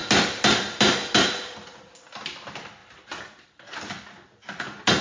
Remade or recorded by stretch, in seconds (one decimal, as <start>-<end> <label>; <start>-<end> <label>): 0.0-5.0 recorded